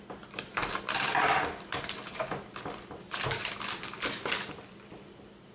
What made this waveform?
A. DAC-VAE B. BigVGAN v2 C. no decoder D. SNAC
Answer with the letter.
C